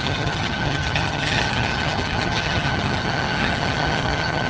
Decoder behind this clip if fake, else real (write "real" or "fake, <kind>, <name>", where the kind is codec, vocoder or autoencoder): fake, vocoder, HiFi-GAN